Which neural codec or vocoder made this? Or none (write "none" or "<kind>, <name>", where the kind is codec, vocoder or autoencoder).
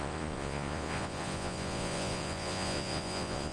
vocoder, Vocos